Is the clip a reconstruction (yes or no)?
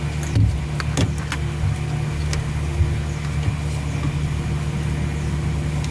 no